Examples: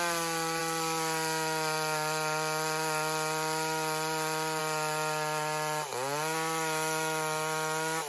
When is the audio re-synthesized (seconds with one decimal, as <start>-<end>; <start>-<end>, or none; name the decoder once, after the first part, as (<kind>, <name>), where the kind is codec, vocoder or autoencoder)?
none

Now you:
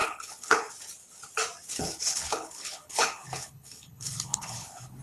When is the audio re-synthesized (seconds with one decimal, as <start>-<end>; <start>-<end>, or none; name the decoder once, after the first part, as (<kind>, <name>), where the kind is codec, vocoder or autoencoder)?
0.0-0.7 (codec, HILCodec); 1.7-5.0

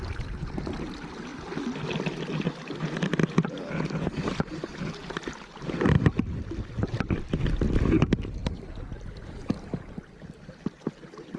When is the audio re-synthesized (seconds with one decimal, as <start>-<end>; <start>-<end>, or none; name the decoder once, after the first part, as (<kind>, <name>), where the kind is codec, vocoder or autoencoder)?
none

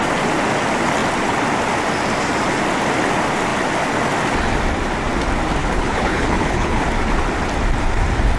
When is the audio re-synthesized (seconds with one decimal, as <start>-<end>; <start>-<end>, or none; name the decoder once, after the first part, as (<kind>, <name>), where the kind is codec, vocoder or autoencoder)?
5.6-6.8 (codec, HILCodec)

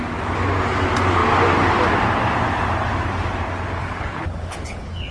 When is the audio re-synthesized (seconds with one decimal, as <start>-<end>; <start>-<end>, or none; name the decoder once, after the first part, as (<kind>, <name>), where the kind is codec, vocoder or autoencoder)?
3.8-5.1 (codec, HILCodec)

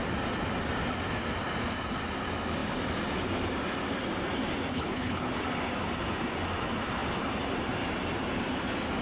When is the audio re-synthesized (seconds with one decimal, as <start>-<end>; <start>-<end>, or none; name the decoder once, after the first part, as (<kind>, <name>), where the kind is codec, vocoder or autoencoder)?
4.7-5.3 (codec, HILCodec)

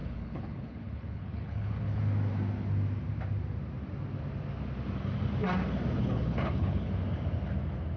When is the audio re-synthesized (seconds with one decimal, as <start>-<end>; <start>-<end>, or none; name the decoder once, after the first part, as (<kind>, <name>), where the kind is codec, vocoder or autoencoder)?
0.0-2.0 (codec, HILCodec); 6.0-6.9

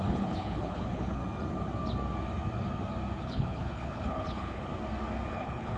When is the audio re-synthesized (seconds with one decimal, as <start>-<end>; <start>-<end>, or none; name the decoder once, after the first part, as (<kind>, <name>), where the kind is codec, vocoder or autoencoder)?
0.0-1.2 (codec, HILCodec); 3.2-4.7; 5.3-5.8